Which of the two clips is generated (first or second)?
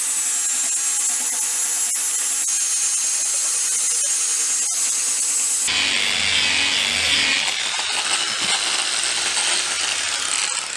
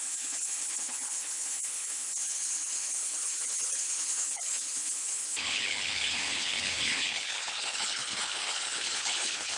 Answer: second